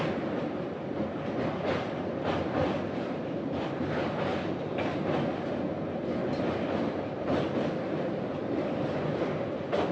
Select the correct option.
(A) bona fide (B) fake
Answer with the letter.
A